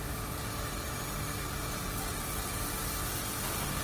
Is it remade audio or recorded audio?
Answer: recorded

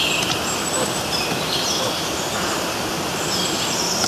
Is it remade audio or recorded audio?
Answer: remade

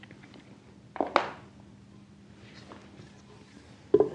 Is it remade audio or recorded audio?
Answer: recorded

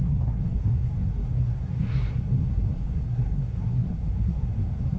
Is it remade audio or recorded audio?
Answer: remade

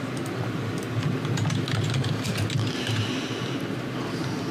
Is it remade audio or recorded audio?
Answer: recorded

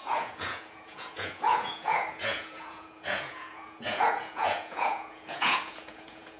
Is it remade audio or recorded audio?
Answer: remade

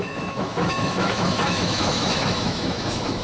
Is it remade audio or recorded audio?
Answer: remade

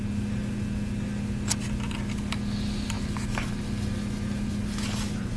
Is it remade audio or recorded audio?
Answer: recorded